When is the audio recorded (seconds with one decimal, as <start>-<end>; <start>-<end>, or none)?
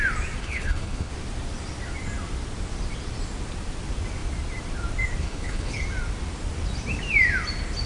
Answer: 0.0-0.4; 1.1-5.2; 5.8-7.9